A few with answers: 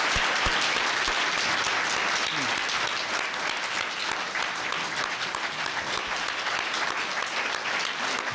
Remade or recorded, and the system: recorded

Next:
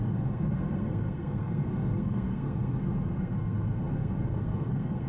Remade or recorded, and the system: remade, codec, SNAC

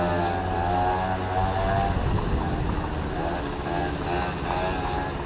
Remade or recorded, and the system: recorded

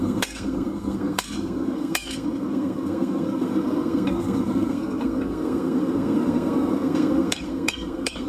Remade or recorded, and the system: remade, codec, SNAC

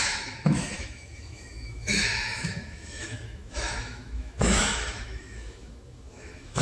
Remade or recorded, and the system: remade, autoencoder, DAC-VAE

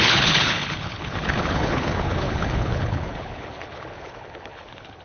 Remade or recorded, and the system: remade, codec, HILCodec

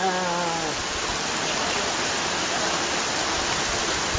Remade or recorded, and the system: recorded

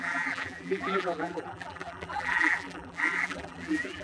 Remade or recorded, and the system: remade, vocoder, BigVGAN v2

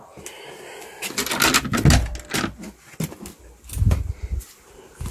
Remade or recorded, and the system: recorded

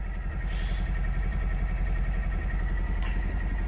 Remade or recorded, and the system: recorded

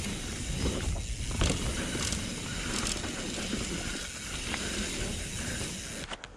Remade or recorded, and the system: recorded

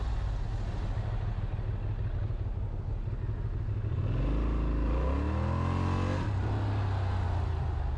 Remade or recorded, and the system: recorded